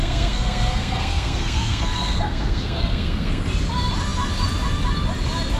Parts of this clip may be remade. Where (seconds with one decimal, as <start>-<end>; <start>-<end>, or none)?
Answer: 0.0-3.4